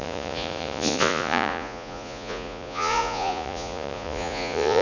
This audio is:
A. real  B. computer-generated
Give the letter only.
B